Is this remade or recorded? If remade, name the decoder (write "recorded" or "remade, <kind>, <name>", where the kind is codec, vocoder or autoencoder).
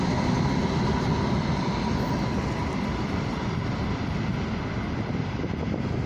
recorded